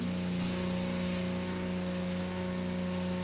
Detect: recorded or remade recorded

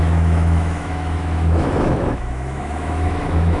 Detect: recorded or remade remade